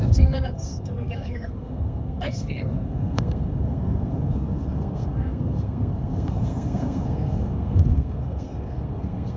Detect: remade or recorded remade